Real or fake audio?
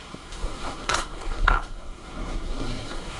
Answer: fake